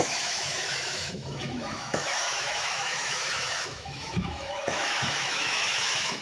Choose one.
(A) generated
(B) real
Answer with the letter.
A